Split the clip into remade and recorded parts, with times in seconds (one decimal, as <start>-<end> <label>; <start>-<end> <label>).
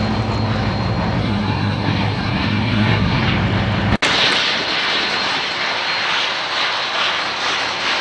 0.0-1.2 recorded; 1.2-3.2 remade; 3.2-8.0 recorded